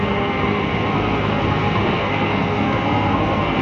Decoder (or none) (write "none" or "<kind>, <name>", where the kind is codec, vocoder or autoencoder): codec, SNAC